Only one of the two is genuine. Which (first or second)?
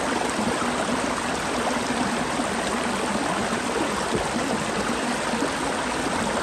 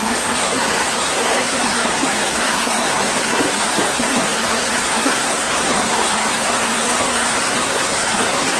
first